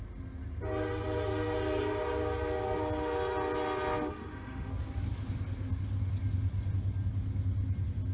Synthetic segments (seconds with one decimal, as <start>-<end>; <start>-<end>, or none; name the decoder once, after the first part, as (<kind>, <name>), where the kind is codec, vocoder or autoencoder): 4.1-4.7 (autoencoder, DAC-VAE)